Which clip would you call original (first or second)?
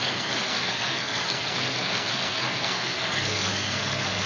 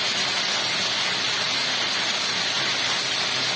second